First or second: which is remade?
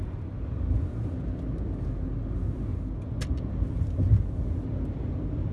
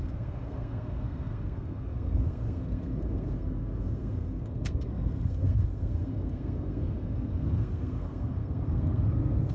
second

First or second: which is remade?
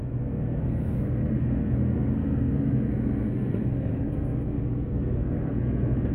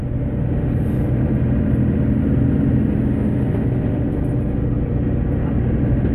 first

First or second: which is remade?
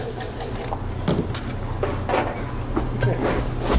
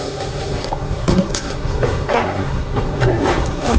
second